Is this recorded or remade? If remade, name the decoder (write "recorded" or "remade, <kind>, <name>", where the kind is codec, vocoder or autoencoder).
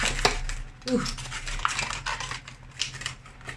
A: recorded